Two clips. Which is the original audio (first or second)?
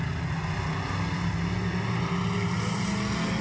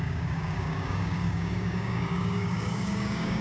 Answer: first